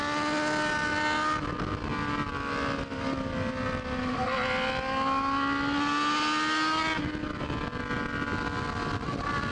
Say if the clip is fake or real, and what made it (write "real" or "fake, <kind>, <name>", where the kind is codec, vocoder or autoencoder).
real